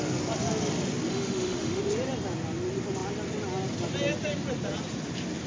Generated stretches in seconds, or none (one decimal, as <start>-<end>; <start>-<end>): 1.1-1.8